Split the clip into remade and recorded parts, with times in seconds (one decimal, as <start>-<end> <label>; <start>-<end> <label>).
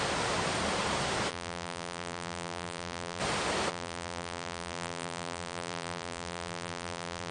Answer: 0.0-1.3 recorded; 1.3-3.2 remade; 3.2-3.7 recorded; 3.7-7.3 remade